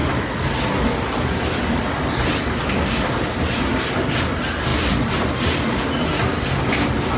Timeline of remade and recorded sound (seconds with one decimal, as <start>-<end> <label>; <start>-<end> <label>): 0.0-7.2 recorded